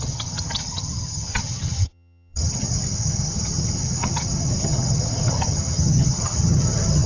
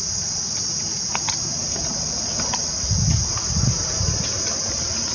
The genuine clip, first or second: second